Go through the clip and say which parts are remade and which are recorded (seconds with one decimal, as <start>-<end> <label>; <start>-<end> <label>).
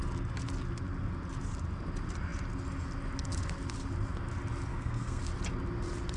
0.0-4.7 recorded; 4.7-5.2 remade; 5.2-6.2 recorded